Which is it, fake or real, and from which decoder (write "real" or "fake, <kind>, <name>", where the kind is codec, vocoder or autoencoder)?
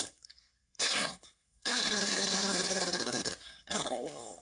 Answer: fake, codec, SNAC